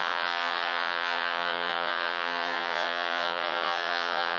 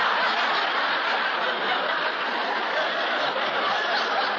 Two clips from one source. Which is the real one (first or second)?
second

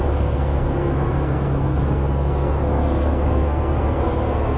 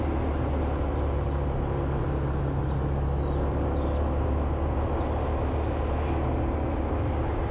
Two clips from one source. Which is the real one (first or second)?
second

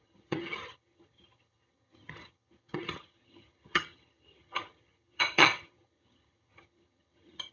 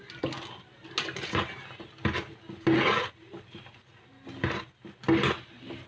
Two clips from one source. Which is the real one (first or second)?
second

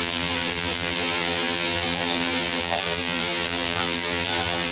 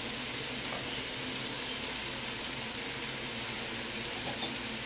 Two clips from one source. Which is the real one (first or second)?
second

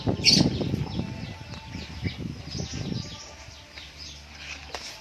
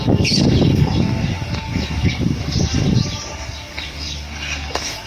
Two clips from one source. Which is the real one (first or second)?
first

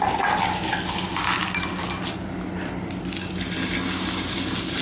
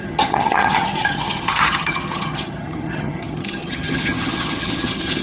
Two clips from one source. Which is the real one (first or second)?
first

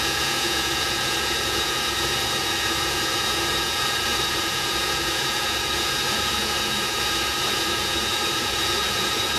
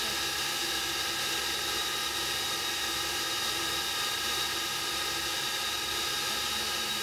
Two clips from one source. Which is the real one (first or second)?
second